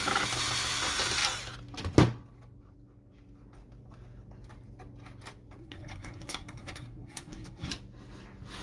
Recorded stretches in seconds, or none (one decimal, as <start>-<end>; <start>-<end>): 0.0-5.6; 7.7-8.6